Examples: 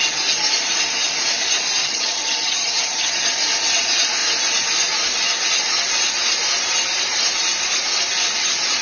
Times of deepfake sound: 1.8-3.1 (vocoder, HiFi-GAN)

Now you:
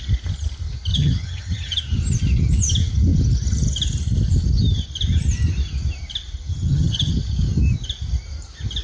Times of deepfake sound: 0.9-1.8 (vocoder, HiFi-GAN); 6.5-7.1

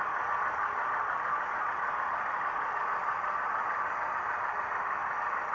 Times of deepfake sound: none

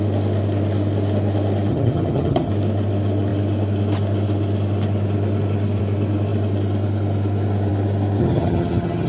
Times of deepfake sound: 1.7-2.5 (vocoder, HiFi-GAN); 8.2-9.1

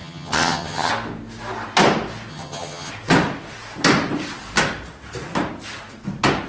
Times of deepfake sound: 0.0-0.9 (vocoder, HiFi-GAN); 2.3-2.9

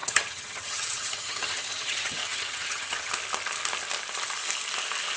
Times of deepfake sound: 0.0-3.1 (vocoder, HiFi-GAN)

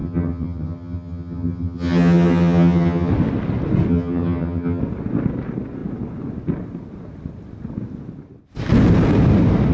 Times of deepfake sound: 0.0-3.1 (vocoder, HiFi-GAN); 3.9-4.8

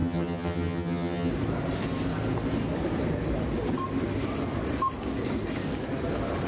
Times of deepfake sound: 0.0-1.3 (vocoder, HiFi-GAN)